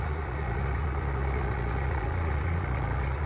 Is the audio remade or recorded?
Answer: remade